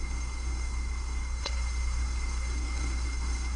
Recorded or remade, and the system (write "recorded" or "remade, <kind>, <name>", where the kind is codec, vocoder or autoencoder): remade, codec, SNAC